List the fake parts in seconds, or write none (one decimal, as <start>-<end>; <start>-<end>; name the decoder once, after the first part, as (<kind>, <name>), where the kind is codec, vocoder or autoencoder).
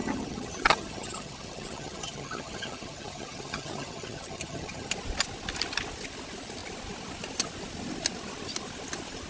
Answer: 0.0-4.9 (vocoder, HiFi-GAN)